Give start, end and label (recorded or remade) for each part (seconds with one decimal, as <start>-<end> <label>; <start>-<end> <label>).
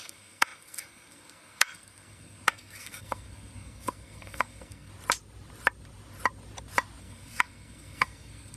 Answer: 0.0-4.9 remade; 4.9-7.0 recorded; 7.0-8.6 remade